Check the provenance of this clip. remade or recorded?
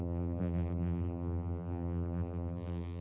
remade